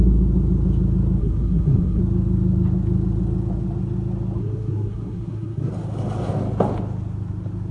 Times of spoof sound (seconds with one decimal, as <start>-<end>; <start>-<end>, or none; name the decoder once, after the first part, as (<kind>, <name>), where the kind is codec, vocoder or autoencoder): 1.2-2.0 (codec, SNAC); 4.4-5.7